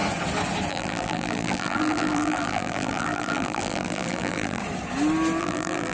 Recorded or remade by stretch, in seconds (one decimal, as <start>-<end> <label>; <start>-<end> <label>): 0.0-0.7 recorded; 0.7-4.6 remade; 4.6-5.4 recorded; 5.4-5.9 remade